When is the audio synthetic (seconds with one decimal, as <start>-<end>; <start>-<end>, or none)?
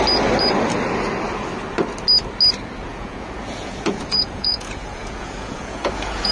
2.8-6.3